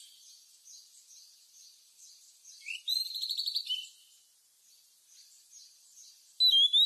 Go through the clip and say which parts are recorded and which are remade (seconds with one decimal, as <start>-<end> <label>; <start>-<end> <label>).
0.0-6.9 recorded